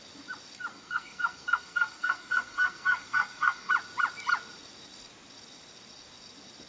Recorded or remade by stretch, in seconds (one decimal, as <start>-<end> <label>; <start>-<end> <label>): 0.0-0.7 recorded; 0.7-3.7 remade; 3.7-6.7 recorded